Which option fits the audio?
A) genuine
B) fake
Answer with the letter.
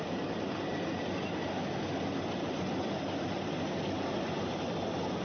A